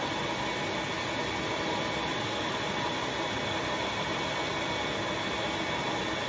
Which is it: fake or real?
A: real